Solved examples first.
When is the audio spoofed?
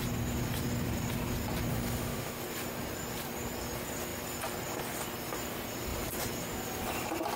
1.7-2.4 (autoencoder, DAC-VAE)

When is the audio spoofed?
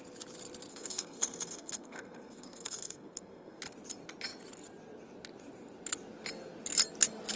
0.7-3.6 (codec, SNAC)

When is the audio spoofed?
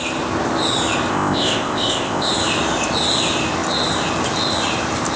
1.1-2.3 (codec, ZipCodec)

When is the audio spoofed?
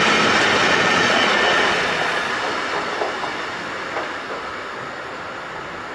0.6-2.3 (vocoder, Vocos)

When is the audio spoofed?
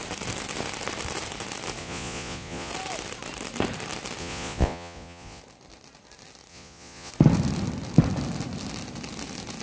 1.8-2.7 (vocoder, Vocos); 4.2-5.4; 6.5-7.1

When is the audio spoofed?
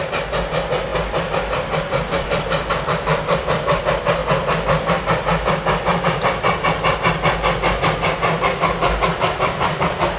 0.9-2.7 (vocoder, BigVGAN v2); 3.1-3.8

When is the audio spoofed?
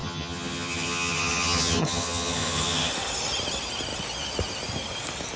0.0-2.9 (vocoder, HiFi-GAN)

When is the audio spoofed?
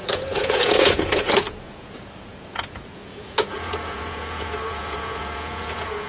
0.0-6.1 (vocoder, Vocos)